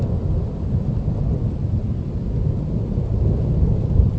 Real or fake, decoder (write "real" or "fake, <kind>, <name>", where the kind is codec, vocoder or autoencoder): real